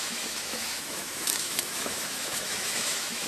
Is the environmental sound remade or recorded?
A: remade